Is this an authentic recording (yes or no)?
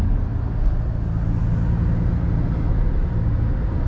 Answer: yes